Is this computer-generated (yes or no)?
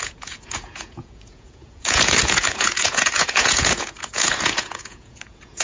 yes